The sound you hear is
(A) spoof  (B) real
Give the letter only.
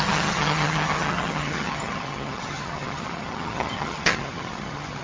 A